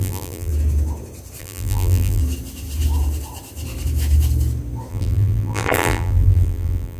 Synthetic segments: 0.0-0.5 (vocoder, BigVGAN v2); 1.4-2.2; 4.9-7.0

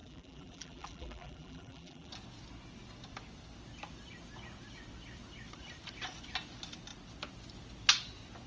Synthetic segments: 0.0-2.1 (vocoder, BigVGAN v2)

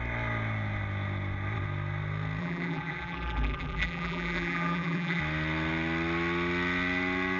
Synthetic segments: 2.4-5.2 (vocoder, BigVGAN v2)

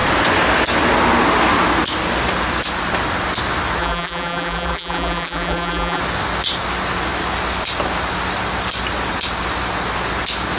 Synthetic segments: 3.8-6.0 (vocoder, BigVGAN v2)

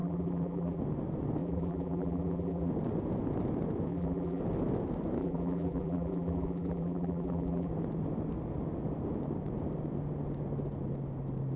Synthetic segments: 0.0-0.8 (vocoder, BigVGAN v2); 1.4-2.7; 3.9-4.4; 5.2-7.7

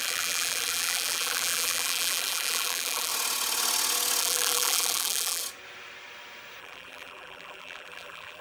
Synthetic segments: 0.0-3.1 (vocoder, BigVGAN v2); 4.2-5.4; 6.6-8.4

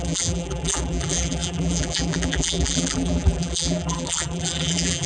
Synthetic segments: 0.0-5.1 (vocoder, BigVGAN v2)